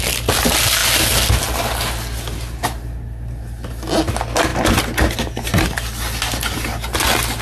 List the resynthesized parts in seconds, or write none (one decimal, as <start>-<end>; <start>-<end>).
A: none